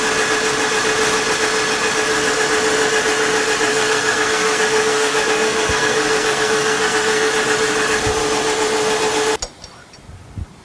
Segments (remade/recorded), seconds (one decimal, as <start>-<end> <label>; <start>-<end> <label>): 0.0-3.7 recorded; 3.7-7.3 remade; 7.3-10.6 recorded